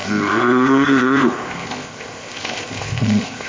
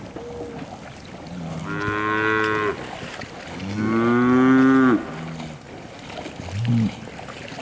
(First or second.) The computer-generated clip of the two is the first